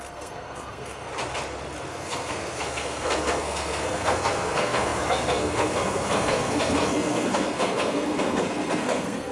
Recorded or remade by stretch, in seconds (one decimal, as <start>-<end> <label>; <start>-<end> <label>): 0.0-1.1 remade; 1.1-1.9 recorded; 1.9-9.3 remade